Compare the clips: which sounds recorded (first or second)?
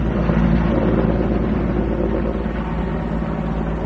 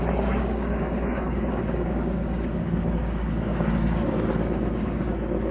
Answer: first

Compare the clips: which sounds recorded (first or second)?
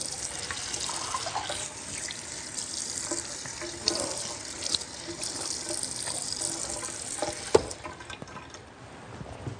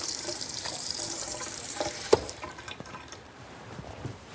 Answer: first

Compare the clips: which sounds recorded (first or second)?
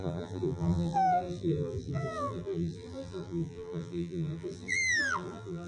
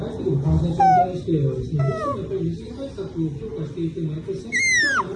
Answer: second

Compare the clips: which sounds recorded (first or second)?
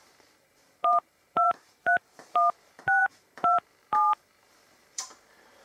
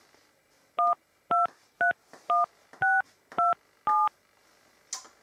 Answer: second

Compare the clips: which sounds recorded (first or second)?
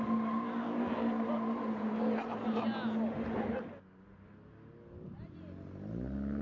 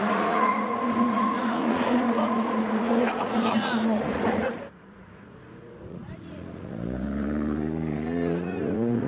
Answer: first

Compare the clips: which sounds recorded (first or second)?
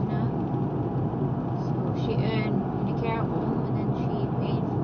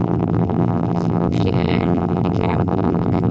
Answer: first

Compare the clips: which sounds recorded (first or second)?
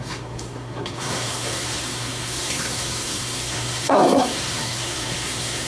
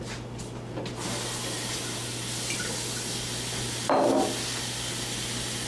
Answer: second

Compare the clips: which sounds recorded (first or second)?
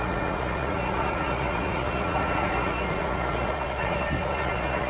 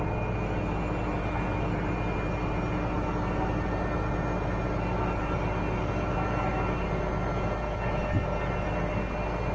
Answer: second